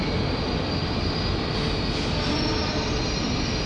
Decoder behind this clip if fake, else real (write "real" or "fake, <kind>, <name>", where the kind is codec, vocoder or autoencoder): real